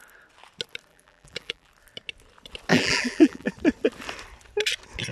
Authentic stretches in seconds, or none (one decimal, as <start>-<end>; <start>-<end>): 0.0-0.9; 1.7-2.7; 3.5-5.1